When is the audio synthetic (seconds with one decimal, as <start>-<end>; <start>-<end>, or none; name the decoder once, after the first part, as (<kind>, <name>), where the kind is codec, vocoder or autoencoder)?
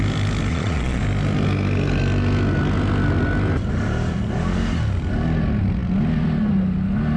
0.5-1.0 (vocoder, Vocos)